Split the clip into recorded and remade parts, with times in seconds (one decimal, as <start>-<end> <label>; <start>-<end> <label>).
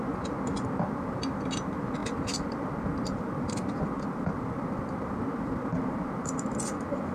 0.0-7.1 recorded